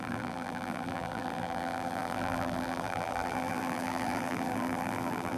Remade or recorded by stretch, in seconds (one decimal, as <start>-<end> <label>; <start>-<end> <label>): 0.0-5.4 remade